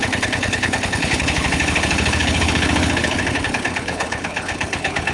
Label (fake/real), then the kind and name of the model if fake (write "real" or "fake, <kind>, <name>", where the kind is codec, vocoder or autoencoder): fake, codec, HILCodec